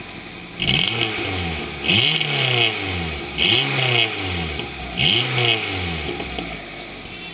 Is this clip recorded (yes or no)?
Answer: yes